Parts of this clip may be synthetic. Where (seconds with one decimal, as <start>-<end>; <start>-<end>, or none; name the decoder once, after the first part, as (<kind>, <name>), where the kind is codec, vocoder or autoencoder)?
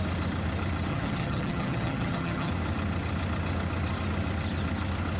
0.9-2.5 (vocoder, HiFi-GAN)